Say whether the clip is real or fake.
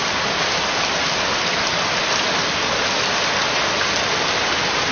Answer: real